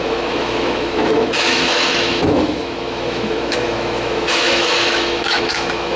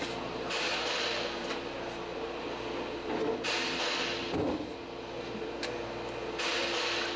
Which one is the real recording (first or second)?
second